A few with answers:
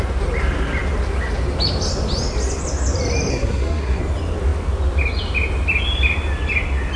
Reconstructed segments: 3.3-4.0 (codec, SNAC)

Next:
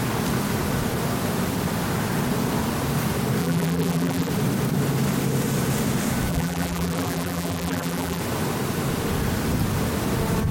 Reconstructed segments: 3.4-4.3 (vocoder, BigVGAN v2); 6.3-8.2

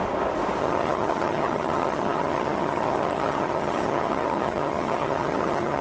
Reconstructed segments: 0.6-5.8 (vocoder, HiFi-GAN)

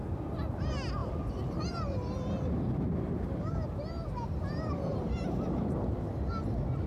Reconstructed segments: 1.0-3.5 (vocoder, BigVGAN v2); 4.9-6.3

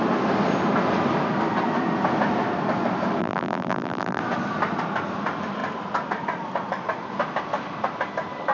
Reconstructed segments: 3.2-4.2 (vocoder, BigVGAN v2)

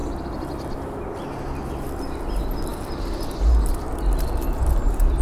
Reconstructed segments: none

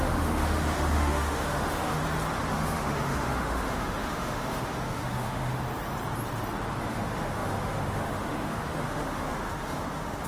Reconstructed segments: 0.0-2.0 (autoencoder, DAC-VAE); 2.5-5.5; 6.8-10.3